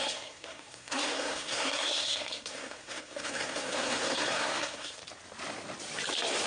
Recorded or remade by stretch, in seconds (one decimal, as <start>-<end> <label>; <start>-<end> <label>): 0.0-5.0 remade; 5.0-6.5 recorded